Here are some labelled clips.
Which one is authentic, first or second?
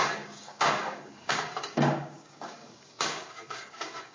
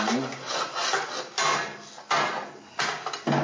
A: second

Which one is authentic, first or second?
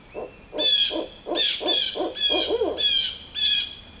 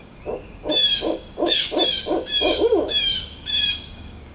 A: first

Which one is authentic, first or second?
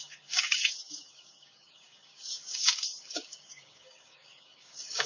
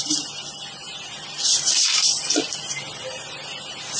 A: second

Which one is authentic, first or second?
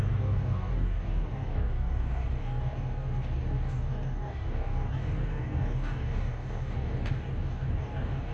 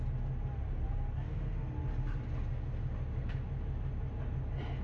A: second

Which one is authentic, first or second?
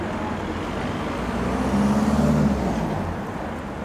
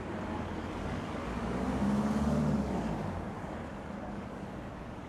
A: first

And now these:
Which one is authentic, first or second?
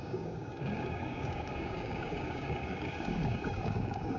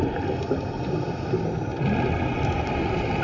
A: second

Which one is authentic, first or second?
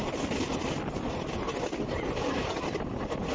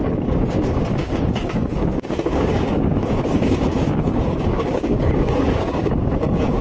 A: first